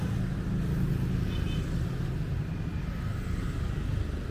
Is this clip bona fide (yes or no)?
yes